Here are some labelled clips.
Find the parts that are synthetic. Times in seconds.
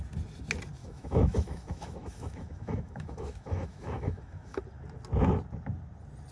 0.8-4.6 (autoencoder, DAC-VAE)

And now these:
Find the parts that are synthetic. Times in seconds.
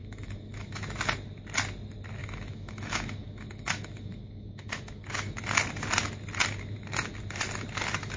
0.0-0.8 (autoencoder, DAC-VAE); 2.2-5.4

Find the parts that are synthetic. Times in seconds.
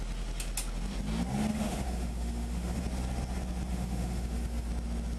1.5-2.8 (autoencoder, DAC-VAE); 3.7-4.7